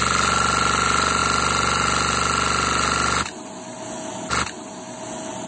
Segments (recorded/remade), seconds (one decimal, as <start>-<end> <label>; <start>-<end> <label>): 0.0-5.5 recorded